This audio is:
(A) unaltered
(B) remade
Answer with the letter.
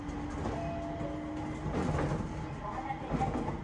A